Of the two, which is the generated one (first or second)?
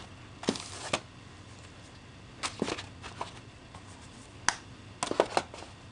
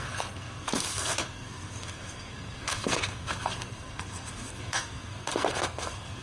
second